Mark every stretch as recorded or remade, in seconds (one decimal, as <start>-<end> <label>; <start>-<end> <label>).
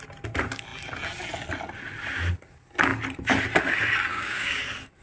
0.0-4.1 recorded; 4.1-4.6 remade; 4.6-5.0 recorded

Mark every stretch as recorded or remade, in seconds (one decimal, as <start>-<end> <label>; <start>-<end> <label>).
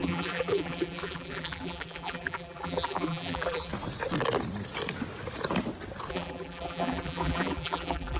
0.0-3.7 remade; 3.7-6.1 recorded; 6.1-8.2 remade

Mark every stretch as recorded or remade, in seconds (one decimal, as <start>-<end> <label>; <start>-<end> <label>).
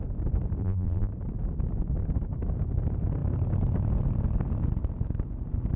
0.0-0.6 recorded; 0.6-1.1 remade; 1.1-5.8 recorded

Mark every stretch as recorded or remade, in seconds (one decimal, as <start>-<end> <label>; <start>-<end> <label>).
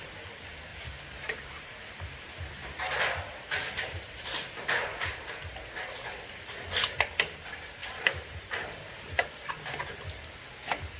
0.0-0.7 recorded; 0.7-4.6 remade; 4.6-7.8 recorded; 7.8-9.7 remade; 9.7-11.0 recorded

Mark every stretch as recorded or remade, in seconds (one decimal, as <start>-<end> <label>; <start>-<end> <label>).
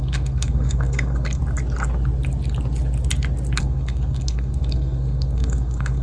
0.0-1.4 remade; 1.4-3.6 recorded; 3.6-6.0 remade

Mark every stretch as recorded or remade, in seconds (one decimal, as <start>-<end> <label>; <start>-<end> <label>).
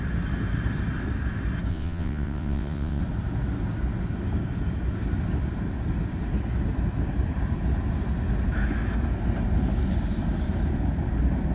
0.0-1.7 recorded; 1.7-3.0 remade; 3.0-11.5 recorded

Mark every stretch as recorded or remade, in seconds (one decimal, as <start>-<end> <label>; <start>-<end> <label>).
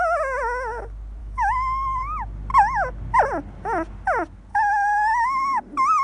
0.0-1.2 recorded; 1.2-2.0 remade; 2.0-4.5 recorded; 4.5-5.6 remade; 5.6-6.0 recorded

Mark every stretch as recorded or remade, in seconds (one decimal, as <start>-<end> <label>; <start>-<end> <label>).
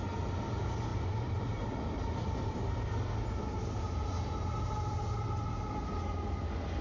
0.0-0.9 recorded; 0.9-5.0 remade; 5.0-6.8 recorded